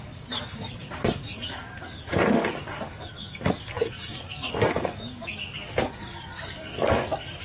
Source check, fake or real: fake